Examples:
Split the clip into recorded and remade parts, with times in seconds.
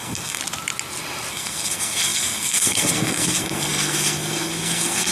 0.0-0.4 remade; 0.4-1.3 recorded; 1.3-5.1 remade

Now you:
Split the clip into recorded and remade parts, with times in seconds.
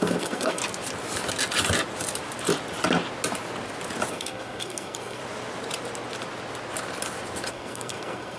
0.0-0.6 remade; 0.6-4.1 recorded; 4.1-5.2 remade; 5.2-7.5 recorded; 7.5-8.4 remade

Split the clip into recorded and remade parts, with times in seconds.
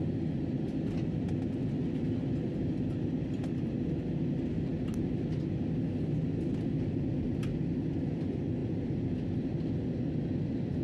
0.0-10.8 recorded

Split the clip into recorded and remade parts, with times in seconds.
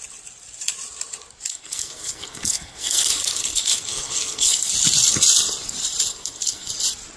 0.0-1.5 recorded; 1.5-4.7 remade; 4.7-6.1 recorded; 6.1-6.7 remade; 6.7-7.2 recorded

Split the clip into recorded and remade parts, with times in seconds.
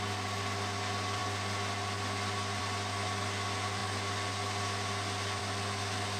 0.0-6.2 recorded